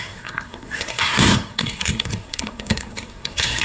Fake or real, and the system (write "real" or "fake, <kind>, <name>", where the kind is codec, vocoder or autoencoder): fake, codec, SNAC